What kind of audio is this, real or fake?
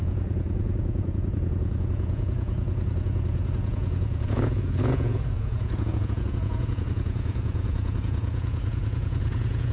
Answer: fake